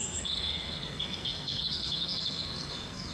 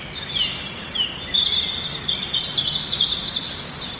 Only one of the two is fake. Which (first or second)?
first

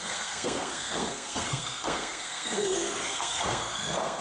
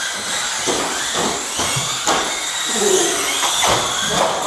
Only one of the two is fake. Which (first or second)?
first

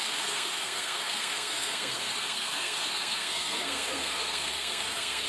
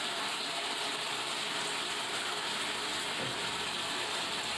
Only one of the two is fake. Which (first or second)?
first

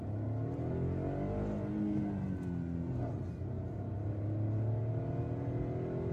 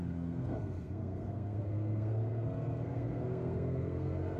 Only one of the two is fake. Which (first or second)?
second